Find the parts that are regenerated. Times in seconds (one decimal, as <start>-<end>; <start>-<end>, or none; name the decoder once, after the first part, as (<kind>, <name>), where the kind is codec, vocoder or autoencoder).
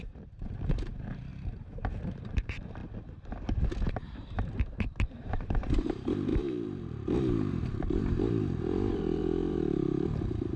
0.0-2.8 (vocoder, BigVGAN v2); 3.9-10.6